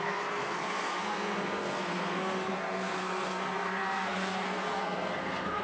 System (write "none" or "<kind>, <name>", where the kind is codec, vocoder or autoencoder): codec, SNAC